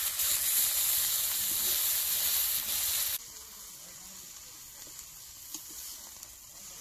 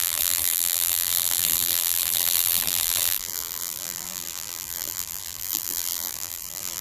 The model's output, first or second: second